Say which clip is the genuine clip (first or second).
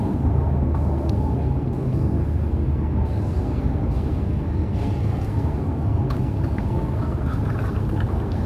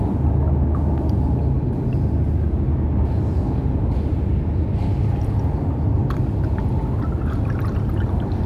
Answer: second